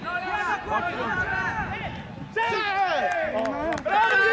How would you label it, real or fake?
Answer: real